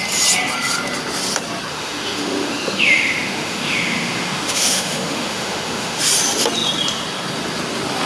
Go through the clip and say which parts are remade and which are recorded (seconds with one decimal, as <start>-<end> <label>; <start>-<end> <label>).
0.0-1.7 recorded; 1.7-6.0 remade; 6.0-8.1 recorded

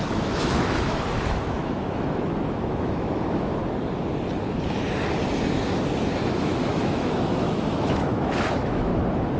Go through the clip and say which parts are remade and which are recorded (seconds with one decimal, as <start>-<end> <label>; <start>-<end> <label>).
0.0-3.6 remade; 3.6-6.3 recorded; 6.3-8.9 remade; 8.9-9.4 recorded

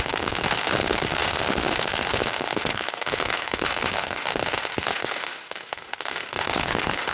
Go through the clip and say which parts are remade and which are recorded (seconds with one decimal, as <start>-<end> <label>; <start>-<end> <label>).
0.0-7.1 remade

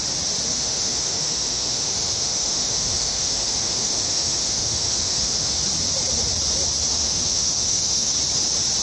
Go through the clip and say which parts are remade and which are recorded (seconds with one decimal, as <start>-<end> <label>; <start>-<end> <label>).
0.0-0.5 recorded; 0.5-5.6 remade; 5.6-6.9 recorded; 6.9-8.1 remade; 8.1-8.8 recorded

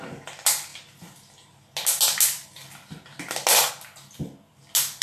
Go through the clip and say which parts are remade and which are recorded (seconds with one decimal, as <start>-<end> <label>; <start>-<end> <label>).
0.0-5.0 recorded